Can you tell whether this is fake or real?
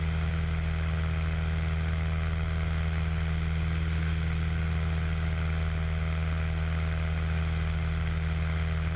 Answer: real